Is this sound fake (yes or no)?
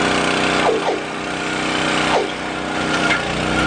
no